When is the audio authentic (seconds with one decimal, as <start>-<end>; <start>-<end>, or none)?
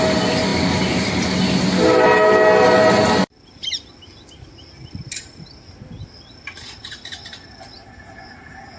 0.0-8.8